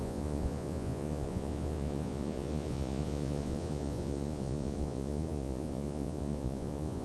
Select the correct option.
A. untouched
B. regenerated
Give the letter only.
B